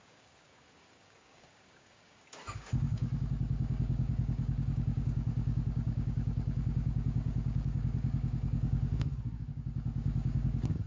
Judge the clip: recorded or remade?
remade